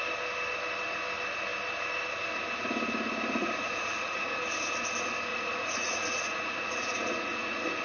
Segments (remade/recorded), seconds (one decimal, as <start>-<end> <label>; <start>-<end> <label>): 0.0-3.4 recorded; 3.4-4.4 remade; 4.4-5.3 recorded; 5.3-7.8 remade